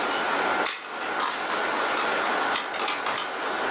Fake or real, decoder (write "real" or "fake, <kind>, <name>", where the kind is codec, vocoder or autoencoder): real